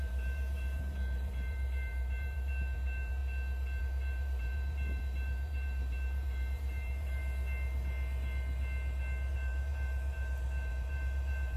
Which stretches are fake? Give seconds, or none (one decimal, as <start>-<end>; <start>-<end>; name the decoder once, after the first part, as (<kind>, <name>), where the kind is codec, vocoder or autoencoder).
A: 0.0-3.2 (vocoder, BigVGAN v2); 3.8-7.2; 9.3-11.6